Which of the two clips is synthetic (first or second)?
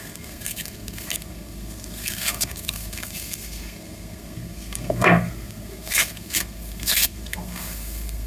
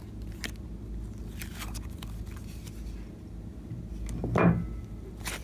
first